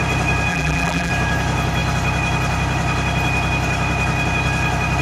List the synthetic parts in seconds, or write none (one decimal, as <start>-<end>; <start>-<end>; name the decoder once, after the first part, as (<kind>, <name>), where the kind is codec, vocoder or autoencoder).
0.5-1.1 (vocoder, BigVGAN v2)

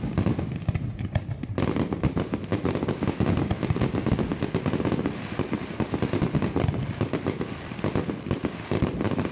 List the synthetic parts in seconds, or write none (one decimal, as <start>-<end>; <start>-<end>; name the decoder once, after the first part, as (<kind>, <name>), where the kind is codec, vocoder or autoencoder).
none